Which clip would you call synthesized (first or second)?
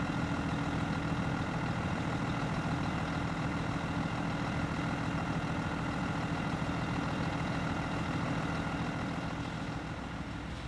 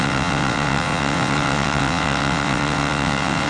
second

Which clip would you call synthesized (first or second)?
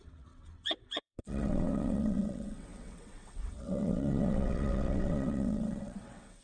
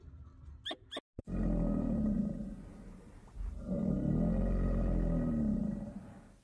first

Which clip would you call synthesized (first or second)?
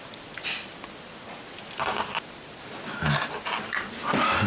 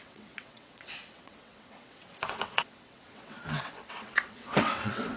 second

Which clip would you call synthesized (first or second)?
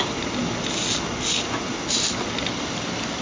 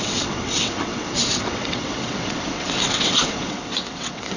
second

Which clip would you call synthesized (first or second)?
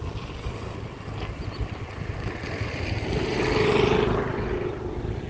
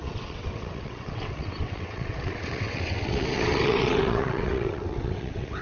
second